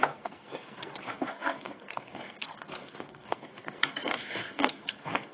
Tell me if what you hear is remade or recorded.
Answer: remade